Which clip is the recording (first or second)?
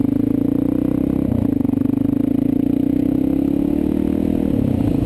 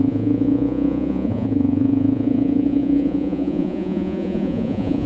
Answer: first